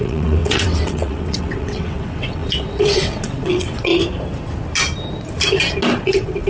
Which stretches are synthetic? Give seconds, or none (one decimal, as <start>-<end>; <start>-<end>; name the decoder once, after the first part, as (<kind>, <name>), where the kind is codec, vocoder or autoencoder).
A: 0.0-3.9 (vocoder, WaveNeXt); 6.0-6.5